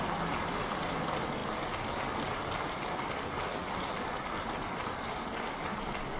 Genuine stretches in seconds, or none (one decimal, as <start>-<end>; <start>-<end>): 0.0-6.2